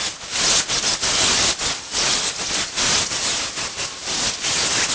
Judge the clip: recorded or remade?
recorded